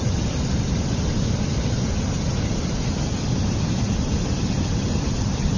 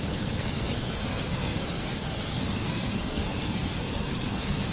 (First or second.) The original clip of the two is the first